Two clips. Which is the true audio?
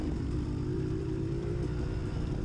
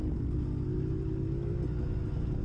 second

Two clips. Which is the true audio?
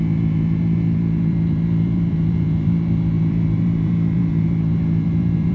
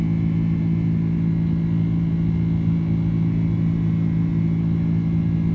second